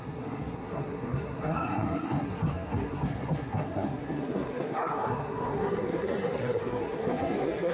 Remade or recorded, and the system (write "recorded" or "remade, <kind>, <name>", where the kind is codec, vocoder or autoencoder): remade, codec, SNAC